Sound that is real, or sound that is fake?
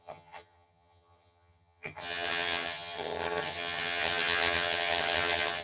fake